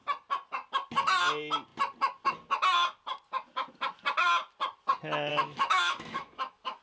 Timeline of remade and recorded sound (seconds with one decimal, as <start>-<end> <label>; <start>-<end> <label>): 0.0-5.3 recorded; 5.3-6.8 remade